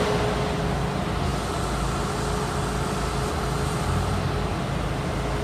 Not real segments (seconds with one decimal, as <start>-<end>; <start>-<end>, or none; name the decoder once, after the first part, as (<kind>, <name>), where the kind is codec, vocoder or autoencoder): none